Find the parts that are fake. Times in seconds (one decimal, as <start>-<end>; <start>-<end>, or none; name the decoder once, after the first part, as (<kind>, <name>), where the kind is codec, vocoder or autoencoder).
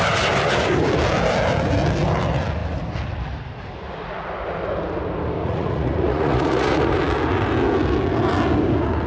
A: 5.4-7.0 (vocoder, Vocos)